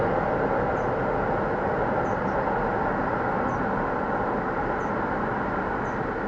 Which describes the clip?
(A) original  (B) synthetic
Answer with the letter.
A